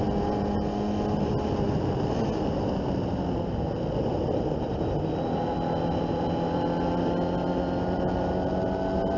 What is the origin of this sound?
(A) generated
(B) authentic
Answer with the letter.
B